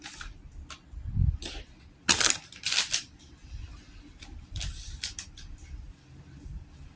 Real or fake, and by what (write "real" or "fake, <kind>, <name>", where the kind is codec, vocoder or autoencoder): real